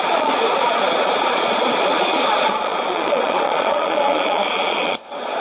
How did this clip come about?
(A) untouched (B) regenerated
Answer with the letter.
B